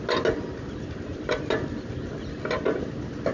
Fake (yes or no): no